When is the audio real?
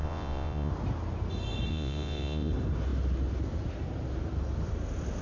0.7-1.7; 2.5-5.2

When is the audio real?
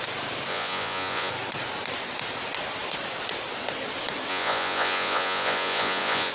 0.0-0.5; 1.3-4.3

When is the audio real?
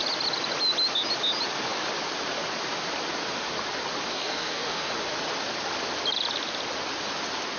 0.0-4.1; 4.9-7.6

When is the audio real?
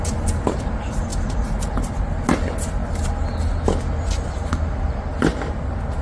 0.0-6.0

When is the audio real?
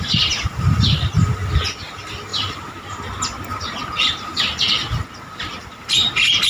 0.0-6.5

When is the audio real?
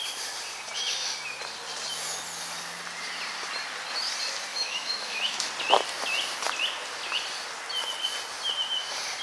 0.0-4.5; 5.5-9.2